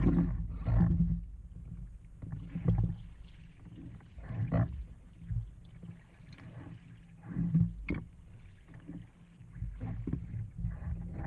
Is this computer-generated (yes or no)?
no